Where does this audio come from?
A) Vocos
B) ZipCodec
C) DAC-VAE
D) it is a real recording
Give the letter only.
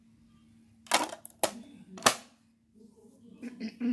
D